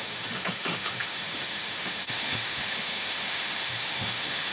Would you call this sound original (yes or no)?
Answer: no